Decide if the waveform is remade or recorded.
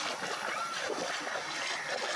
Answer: recorded